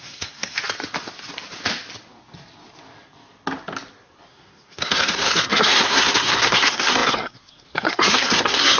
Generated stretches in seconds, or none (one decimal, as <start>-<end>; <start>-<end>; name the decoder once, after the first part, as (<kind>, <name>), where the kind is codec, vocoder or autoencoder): 0.0-0.6 (codec, SNAC); 4.3-8.8